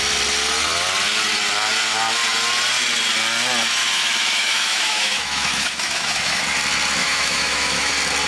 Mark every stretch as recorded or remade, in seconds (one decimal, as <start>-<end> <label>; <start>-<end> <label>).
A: 0.0-3.8 recorded; 3.8-6.4 remade; 6.4-7.0 recorded; 7.0-7.9 remade; 7.9-8.3 recorded